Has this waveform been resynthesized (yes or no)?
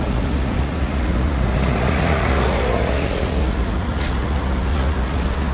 yes